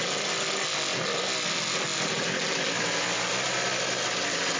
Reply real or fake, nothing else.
real